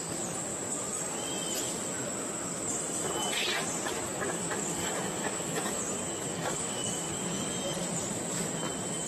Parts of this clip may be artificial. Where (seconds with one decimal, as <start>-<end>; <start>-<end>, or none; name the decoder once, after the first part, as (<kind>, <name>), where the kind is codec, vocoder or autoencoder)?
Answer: 4.1-5.8 (codec, DAC); 6.3-6.9